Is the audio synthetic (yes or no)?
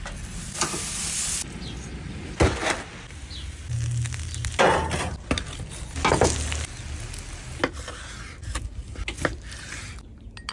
no